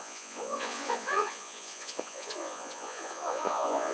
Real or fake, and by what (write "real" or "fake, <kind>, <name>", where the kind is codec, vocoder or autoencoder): fake, vocoder, Vocos